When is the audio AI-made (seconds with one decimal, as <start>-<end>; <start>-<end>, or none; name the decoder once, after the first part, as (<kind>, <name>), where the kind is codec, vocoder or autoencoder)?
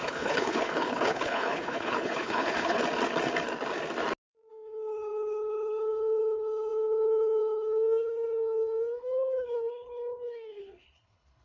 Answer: 0.0-2.8 (codec, HILCodec); 4.5-11.4